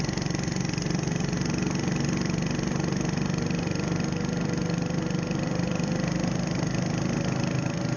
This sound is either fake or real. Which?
real